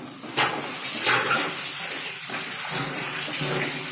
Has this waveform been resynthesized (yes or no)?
no